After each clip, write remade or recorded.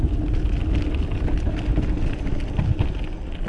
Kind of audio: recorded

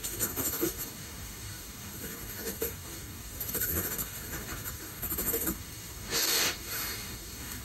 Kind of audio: remade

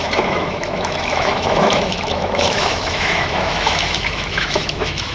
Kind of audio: remade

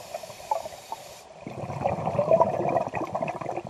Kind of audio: recorded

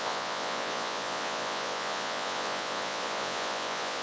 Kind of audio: remade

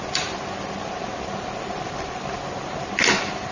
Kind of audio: recorded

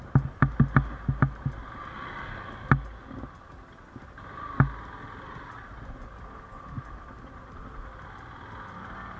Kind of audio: recorded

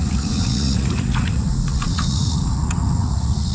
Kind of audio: remade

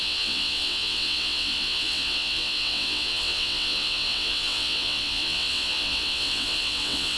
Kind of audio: remade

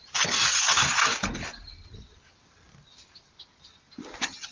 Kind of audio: recorded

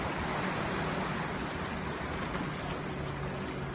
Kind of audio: recorded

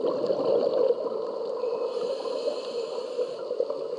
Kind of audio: recorded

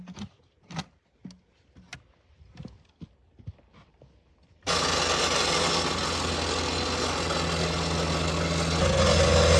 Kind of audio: recorded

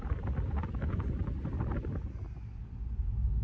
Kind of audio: recorded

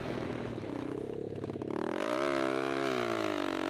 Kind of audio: remade